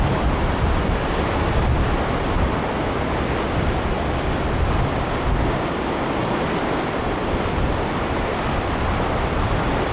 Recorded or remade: recorded